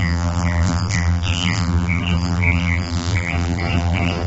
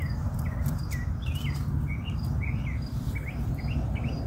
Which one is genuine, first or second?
second